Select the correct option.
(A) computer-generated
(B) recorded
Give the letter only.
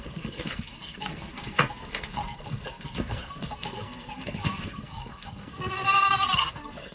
A